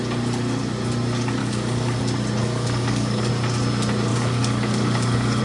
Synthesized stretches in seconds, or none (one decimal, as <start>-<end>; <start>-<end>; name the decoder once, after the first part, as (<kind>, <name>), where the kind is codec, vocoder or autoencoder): 1.4-2.0 (codec, DAC); 2.4-3.3; 4.1-5.4